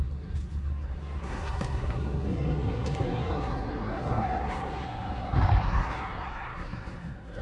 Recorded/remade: remade